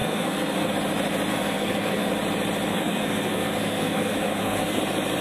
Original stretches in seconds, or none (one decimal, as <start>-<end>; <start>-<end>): 0.7-1.3; 2.1-2.7; 4.8-5.2